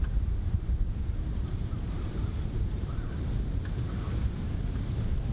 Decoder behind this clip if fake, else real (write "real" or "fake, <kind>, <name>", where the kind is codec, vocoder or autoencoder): fake, vocoder, BigVGAN v2